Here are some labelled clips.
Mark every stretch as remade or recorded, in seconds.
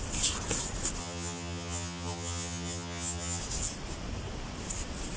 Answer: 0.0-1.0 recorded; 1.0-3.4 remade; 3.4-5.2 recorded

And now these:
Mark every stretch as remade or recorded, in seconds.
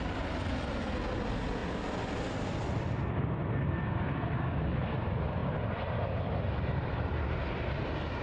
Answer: 0.0-8.2 recorded